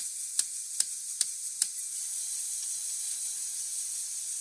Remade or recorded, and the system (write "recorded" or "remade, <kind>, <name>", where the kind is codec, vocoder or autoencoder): recorded